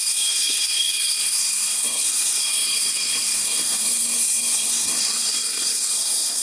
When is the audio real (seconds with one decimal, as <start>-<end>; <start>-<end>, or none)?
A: none